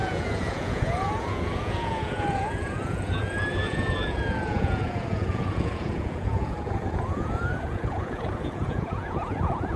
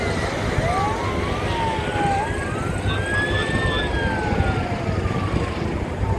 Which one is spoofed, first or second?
first